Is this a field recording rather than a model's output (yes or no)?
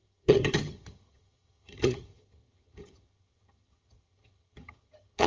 no